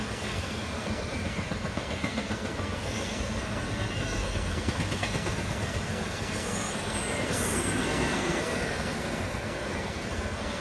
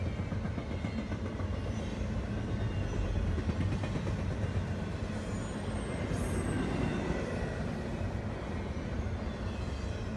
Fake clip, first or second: first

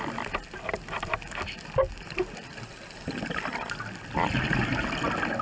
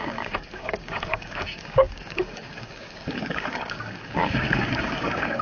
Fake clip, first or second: second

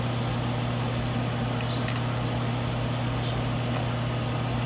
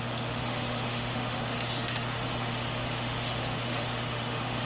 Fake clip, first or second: second